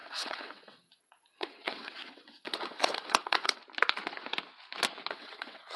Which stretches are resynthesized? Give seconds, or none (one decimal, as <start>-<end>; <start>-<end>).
0.0-3.6; 5.1-5.8